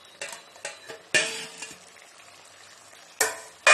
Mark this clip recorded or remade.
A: recorded